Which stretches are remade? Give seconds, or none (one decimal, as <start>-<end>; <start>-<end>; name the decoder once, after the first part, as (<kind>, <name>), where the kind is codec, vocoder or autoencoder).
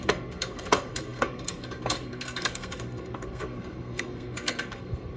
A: 0.0-5.2 (codec, SNAC)